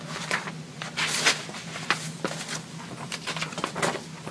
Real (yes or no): yes